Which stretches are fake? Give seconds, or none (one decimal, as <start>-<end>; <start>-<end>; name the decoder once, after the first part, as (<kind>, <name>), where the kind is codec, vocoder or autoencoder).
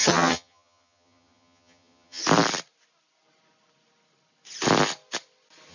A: 0.0-2.2 (vocoder, HiFi-GAN)